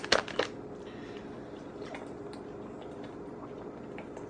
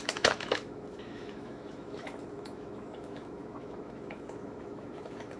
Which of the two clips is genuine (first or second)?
first